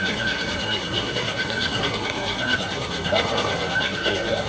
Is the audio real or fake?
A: fake